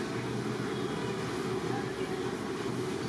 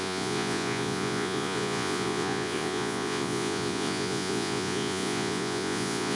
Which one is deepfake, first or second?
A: second